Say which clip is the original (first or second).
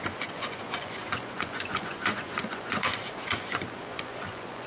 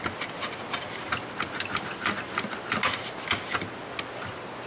second